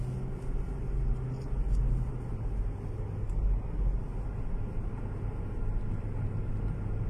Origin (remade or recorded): recorded